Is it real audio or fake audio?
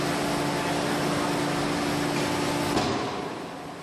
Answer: real